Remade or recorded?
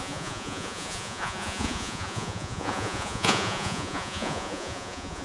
remade